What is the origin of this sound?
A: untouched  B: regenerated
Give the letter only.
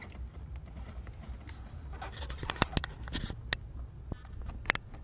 A